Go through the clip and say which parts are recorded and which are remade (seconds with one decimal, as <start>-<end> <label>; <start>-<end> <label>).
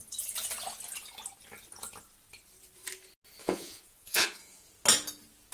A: 0.0-3.4 recorded; 3.4-4.6 remade; 4.6-5.5 recorded